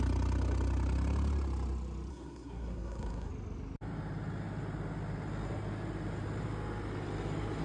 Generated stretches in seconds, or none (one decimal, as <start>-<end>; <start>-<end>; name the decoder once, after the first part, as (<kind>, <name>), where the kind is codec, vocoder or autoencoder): 2.1-3.3 (codec, SNAC)